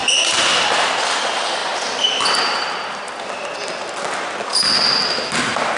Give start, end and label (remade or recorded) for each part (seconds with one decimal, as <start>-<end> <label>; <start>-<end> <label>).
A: 0.0-5.8 recorded